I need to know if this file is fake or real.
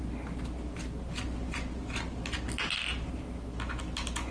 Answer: real